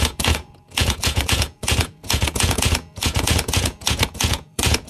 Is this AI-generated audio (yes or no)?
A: yes